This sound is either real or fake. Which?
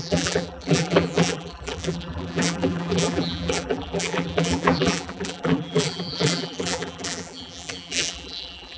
fake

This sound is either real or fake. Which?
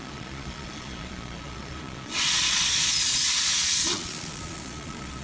fake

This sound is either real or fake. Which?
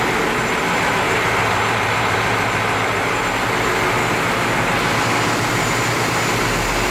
real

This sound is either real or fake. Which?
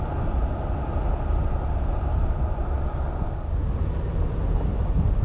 real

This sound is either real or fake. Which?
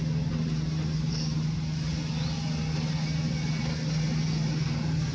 real